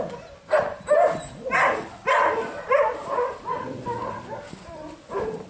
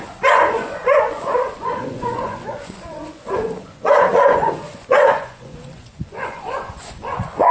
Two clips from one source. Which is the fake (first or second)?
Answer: second